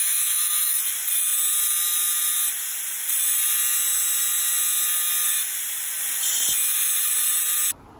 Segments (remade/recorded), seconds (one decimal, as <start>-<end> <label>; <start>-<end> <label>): 0.0-0.8 remade; 0.8-8.0 recorded

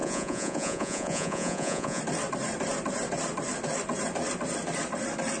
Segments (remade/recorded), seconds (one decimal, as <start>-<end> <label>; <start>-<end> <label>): 0.0-2.0 remade; 2.0-5.4 recorded

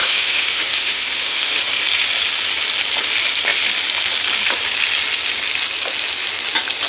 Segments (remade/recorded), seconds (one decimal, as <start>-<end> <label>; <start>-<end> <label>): 0.0-1.6 remade; 1.6-6.9 recorded

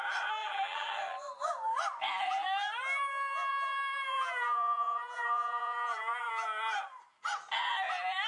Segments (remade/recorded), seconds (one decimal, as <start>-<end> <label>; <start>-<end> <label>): 0.0-0.4 recorded; 0.4-0.9 remade; 0.9-3.5 recorded; 3.5-6.3 remade; 6.3-8.3 recorded

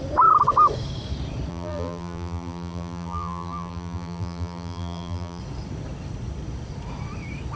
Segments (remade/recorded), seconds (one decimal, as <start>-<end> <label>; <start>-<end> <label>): 0.0-1.5 recorded; 1.5-5.4 remade; 5.4-7.6 recorded

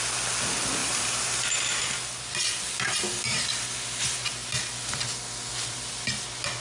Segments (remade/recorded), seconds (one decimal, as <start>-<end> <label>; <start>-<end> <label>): 0.0-0.8 recorded; 0.8-1.8 remade; 1.8-6.6 recorded

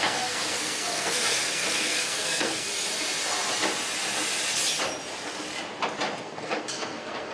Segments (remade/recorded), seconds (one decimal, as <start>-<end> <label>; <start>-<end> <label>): 0.0-2.7 remade; 2.7-6.2 recorded; 6.2-7.3 remade

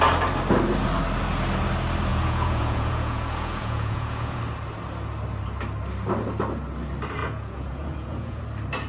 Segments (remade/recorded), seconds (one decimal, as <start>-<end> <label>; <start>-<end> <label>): 0.0-2.1 recorded; 2.1-4.4 remade; 4.4-7.2 recorded; 7.2-8.4 remade; 8.4-8.9 recorded